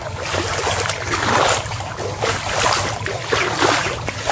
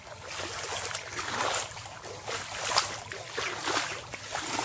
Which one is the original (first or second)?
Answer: second